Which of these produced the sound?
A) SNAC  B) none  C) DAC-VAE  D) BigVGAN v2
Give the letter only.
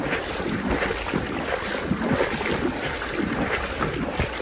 B